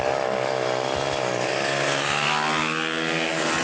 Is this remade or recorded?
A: recorded